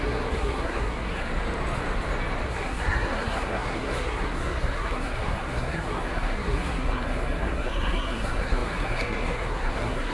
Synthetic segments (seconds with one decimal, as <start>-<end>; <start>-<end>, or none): 0.0-1.3; 2.5-10.1